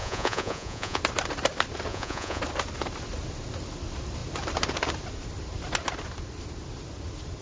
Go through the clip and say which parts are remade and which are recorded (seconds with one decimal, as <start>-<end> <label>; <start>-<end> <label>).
0.0-1.0 remade; 1.0-1.9 recorded; 1.9-2.4 remade; 2.4-7.4 recorded